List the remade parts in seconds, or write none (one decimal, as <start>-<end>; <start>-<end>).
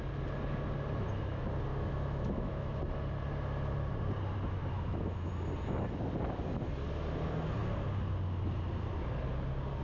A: 1.7-2.8; 4.7-5.3